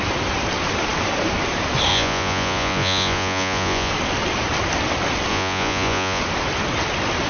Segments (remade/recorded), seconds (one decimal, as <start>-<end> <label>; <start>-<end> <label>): 0.0-1.9 recorded; 1.9-3.9 remade; 3.9-5.3 recorded; 5.3-6.2 remade; 6.2-7.3 recorded